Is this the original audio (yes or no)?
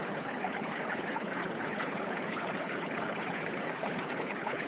no